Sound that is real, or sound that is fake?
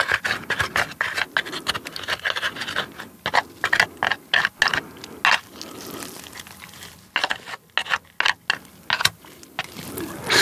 real